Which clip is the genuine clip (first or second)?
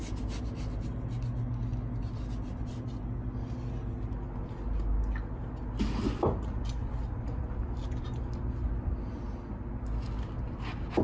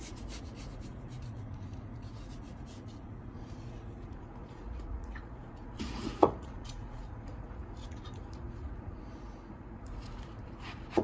first